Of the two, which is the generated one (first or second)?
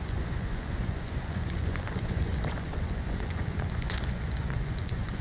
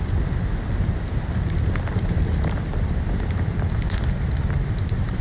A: first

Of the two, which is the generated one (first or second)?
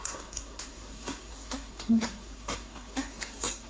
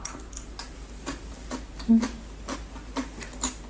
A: first